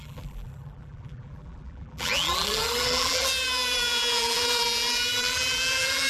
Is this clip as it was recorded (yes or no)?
no